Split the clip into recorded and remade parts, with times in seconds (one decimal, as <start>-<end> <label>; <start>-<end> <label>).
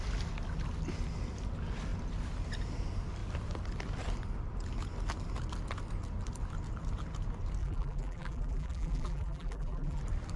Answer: 0.0-7.6 recorded; 7.6-10.0 remade; 10.0-10.4 recorded